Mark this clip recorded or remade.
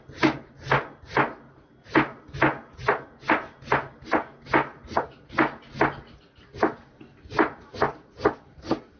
recorded